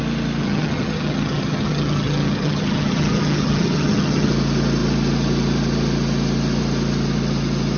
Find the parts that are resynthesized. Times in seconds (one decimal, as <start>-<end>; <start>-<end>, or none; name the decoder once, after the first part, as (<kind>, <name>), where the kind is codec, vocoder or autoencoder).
0.4-4.3 (vocoder, HiFi-GAN)